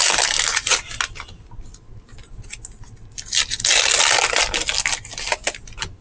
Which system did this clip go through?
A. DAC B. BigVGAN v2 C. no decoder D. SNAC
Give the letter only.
C